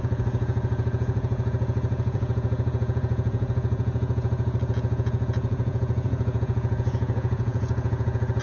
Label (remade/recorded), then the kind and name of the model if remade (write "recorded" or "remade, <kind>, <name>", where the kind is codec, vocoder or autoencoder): remade, vocoder, Vocos